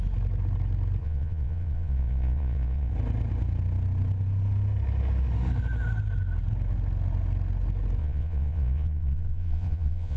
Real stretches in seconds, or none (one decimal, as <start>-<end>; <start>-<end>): 0.0-1.0; 2.9-8.0